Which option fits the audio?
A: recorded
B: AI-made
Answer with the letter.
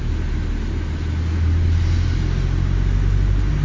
A